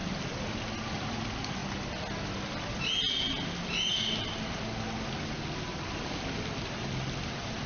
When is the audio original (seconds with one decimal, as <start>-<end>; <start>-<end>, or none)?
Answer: 0.0-0.5; 1.6-5.9